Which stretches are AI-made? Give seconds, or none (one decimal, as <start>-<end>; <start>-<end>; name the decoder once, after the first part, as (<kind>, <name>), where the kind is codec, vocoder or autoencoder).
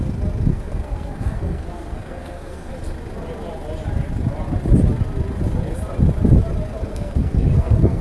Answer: 0.5-2.7 (codec, SNAC); 6.9-8.0